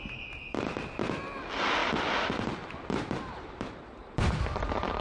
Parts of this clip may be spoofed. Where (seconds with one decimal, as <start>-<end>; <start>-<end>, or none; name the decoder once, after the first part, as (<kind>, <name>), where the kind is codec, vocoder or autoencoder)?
none